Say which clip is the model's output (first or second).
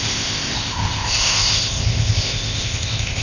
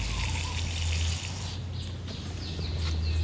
first